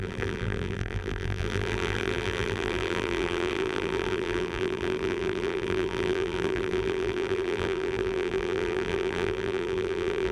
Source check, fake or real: fake